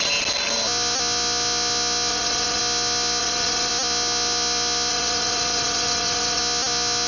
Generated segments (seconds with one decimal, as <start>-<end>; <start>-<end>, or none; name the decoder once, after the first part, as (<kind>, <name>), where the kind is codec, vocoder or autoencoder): 2.1-2.6 (vocoder, WaveNeXt); 3.2-3.7; 4.9-6.4